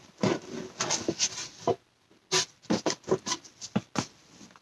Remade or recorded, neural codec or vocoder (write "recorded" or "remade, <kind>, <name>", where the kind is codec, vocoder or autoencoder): recorded